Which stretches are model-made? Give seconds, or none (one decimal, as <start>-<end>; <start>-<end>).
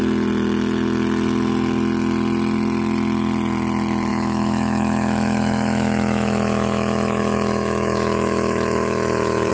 4.1-9.5